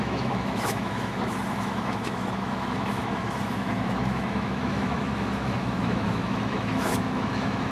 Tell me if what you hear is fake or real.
fake